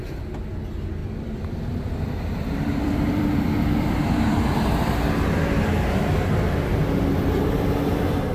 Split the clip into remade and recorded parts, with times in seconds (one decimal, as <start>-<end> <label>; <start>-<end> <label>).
0.0-1.0 recorded; 1.0-4.4 remade; 4.4-8.3 recorded